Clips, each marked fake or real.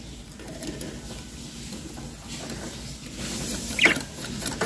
real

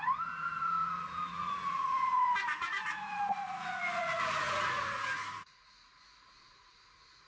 fake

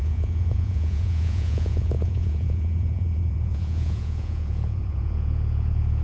fake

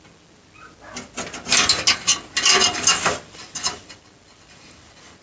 real